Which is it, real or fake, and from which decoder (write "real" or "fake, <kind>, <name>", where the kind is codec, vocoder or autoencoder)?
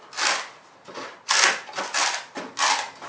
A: real